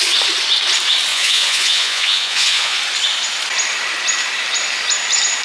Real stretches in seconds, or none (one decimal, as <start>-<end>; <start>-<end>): 0.0-1.1; 2.8-5.4